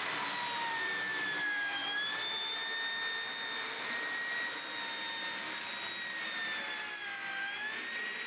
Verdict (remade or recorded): recorded